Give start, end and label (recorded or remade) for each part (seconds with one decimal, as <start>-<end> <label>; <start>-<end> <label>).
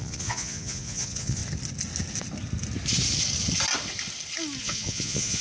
0.0-1.4 remade; 1.4-4.6 recorded; 4.6-5.4 remade